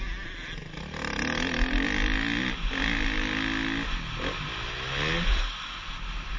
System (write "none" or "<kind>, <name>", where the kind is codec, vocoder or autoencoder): none